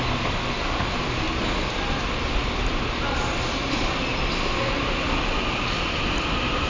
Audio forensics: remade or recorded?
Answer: recorded